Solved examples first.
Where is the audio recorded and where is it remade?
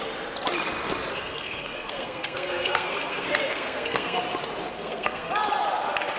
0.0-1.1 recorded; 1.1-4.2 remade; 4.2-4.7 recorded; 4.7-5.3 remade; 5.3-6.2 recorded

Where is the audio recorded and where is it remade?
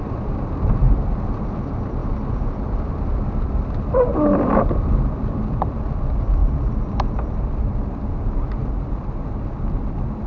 0.0-2.0 remade; 2.0-3.6 recorded; 3.6-10.3 remade